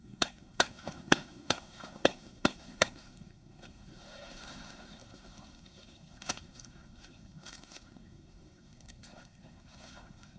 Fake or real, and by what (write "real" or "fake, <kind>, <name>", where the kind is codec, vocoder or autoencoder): fake, codec, SNAC